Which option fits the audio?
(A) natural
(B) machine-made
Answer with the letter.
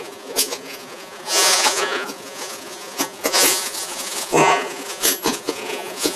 B